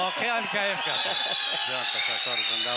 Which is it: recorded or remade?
recorded